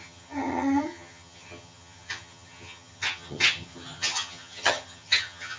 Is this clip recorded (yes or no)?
no